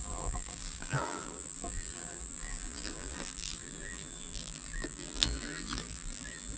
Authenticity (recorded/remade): remade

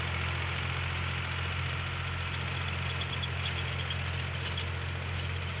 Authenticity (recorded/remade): recorded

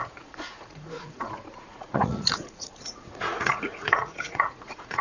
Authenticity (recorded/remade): remade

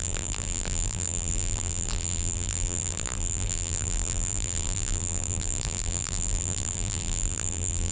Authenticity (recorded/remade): remade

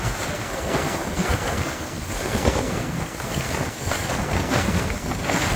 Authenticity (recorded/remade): remade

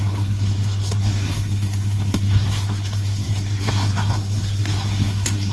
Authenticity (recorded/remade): remade